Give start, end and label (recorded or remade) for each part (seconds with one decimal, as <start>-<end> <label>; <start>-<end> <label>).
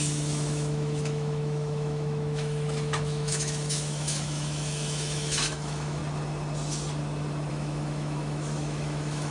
0.0-6.0 remade; 6.0-7.5 recorded; 7.5-9.3 remade